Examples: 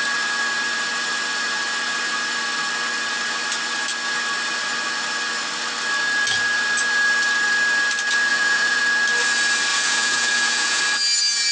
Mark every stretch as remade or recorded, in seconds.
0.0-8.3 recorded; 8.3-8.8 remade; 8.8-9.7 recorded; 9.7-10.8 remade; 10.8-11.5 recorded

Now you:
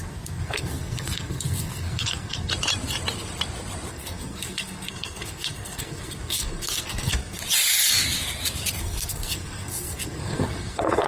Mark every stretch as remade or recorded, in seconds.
0.0-2.5 remade; 2.5-3.9 recorded; 3.9-7.4 remade; 7.4-8.8 recorded; 8.8-11.1 remade

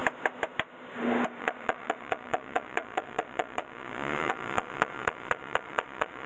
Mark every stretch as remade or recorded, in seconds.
0.0-1.4 recorded; 1.4-6.3 remade

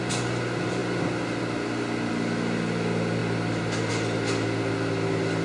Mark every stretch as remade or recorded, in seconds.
0.0-5.4 recorded